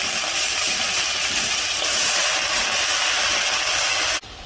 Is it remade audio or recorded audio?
recorded